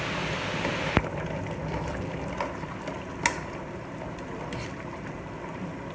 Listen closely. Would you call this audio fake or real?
real